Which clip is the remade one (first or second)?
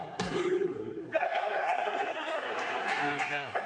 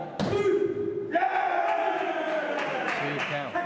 first